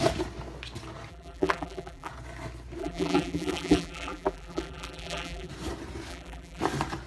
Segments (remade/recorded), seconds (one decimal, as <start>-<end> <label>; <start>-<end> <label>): 0.0-1.1 recorded; 1.1-2.1 remade; 2.1-2.8 recorded; 2.8-5.5 remade; 5.5-6.1 recorded; 6.1-6.6 remade; 6.6-7.1 recorded